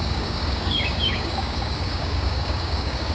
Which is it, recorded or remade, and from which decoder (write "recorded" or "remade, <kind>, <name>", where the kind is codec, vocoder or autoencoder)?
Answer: remade, codec, DAC